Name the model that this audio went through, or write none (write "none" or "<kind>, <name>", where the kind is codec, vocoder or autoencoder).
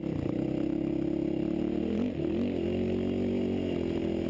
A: none